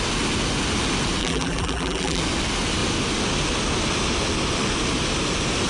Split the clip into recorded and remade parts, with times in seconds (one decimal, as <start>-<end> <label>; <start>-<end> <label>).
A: 0.0-1.2 recorded; 1.2-2.2 remade; 2.2-5.7 recorded